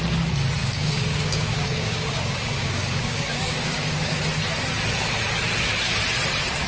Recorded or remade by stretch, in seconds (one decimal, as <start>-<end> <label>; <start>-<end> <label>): 0.0-0.6 recorded; 0.6-4.2 remade; 4.2-6.7 recorded